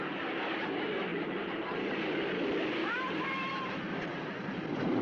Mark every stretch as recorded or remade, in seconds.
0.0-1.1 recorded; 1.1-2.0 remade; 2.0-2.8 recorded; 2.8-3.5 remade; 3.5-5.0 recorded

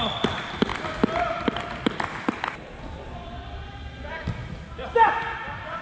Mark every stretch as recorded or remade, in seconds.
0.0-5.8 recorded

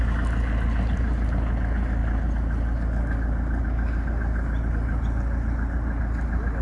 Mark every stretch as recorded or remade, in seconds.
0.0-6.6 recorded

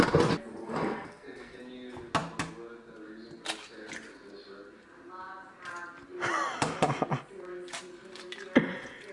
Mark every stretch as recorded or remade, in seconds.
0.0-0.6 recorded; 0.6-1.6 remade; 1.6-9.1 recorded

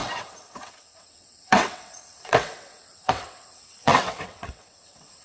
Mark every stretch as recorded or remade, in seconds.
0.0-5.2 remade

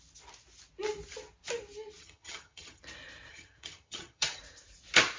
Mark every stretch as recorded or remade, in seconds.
0.0-2.0 recorded; 2.0-2.8 remade; 2.8-3.3 recorded; 3.3-4.4 remade; 4.4-5.2 recorded

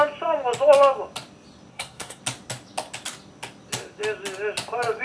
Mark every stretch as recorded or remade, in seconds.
0.0-1.7 recorded; 1.7-2.2 remade; 2.2-5.0 recorded